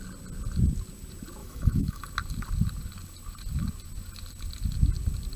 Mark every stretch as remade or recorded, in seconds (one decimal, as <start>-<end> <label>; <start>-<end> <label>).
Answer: 0.0-1.4 recorded; 1.4-2.0 remade; 2.0-5.4 recorded